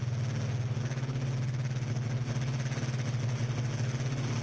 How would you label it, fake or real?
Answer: real